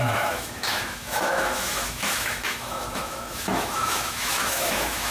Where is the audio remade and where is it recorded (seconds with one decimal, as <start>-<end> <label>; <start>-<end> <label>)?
0.0-5.1 remade